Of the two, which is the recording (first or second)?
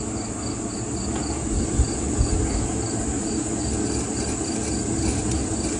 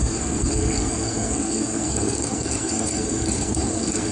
first